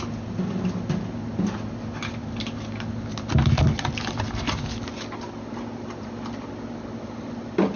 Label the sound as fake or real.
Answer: real